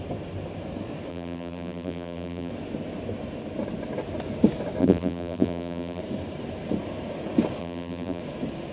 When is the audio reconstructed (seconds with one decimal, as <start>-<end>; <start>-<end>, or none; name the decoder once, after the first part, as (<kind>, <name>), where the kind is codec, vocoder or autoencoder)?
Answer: 1.1-2.5 (vocoder, BigVGAN v2); 4.8-6.0; 7.6-8.2